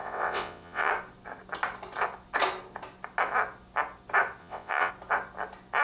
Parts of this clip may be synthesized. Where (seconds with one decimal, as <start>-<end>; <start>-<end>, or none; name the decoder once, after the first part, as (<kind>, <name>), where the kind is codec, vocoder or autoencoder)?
0.0-0.9 (vocoder, WaveNeXt); 4.4-4.9